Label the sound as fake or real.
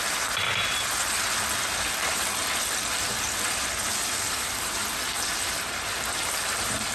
real